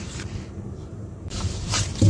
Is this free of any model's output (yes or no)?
no